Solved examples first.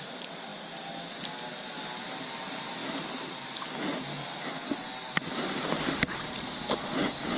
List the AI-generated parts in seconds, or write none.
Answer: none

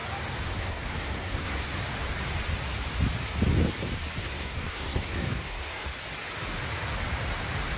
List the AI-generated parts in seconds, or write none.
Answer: 0.5-1.7 (codec, SNAC); 4.2-5.9

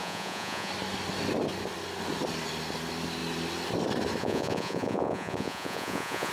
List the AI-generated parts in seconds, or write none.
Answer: 0.0-0.7 (vocoder, Vocos); 4.2-6.3

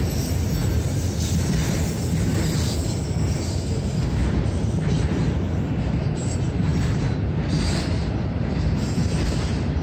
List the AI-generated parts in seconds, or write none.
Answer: 4.2-5.8 (vocoder, BigVGAN v2); 6.7-7.3

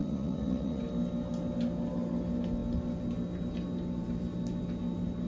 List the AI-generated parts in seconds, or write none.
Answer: 0.0-0.8 (vocoder, Vocos)

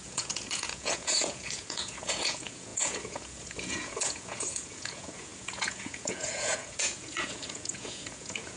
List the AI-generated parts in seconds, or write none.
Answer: 0.0-8.6 (vocoder, Vocos)

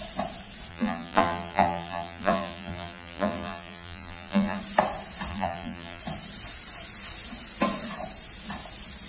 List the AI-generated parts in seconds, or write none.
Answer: 0.7-4.6 (vocoder, BigVGAN v2); 5.3-6.0